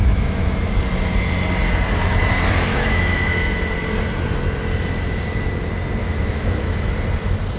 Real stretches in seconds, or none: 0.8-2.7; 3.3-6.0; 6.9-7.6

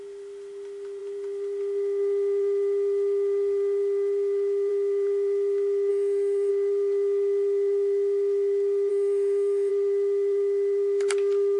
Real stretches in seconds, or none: 0.0-5.9; 6.5-8.9; 9.7-11.6